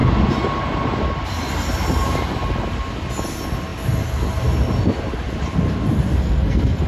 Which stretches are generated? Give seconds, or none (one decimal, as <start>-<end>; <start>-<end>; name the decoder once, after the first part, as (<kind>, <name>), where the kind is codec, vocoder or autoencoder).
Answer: 6.1-6.9 (codec, SNAC)

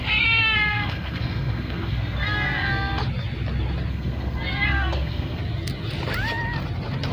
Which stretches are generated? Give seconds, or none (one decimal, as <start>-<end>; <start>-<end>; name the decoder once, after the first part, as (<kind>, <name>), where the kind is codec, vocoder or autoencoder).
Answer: 0.0-3.0 (codec, SNAC); 3.9-5.4

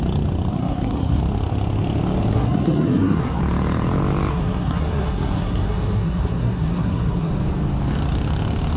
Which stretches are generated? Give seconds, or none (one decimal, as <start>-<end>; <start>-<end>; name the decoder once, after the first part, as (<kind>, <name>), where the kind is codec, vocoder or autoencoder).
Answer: 0.5-1.2 (codec, SNAC); 2.3-3.4; 4.3-7.3

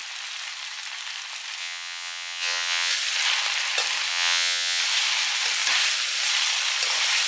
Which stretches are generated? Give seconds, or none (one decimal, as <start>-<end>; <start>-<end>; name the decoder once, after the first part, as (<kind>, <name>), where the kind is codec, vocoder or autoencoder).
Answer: 1.6-2.9 (vocoder, WaveNeXt); 4.1-4.8

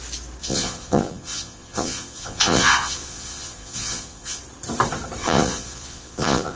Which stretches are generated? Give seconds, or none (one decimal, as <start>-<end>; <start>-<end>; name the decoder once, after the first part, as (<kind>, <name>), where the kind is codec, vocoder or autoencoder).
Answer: 0.4-4.4 (vocoder, Vocos); 5.2-6.6